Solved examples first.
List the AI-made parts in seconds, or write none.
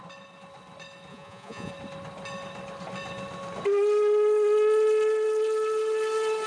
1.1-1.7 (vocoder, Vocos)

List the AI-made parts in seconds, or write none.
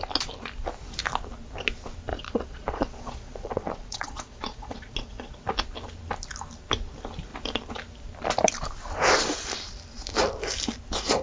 2.1-5.4 (vocoder, Vocos)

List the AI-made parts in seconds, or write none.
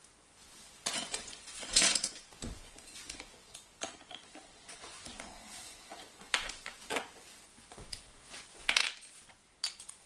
0.0-8.8 (vocoder, Vocos); 9.7-10.1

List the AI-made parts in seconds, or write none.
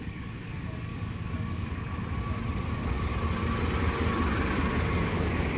0.0-1.9 (codec, DAC); 2.7-3.1; 4.9-5.6